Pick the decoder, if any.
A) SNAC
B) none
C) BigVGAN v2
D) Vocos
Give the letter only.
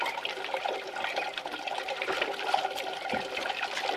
C